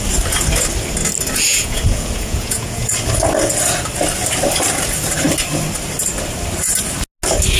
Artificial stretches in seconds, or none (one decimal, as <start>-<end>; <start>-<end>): 1.5-2.9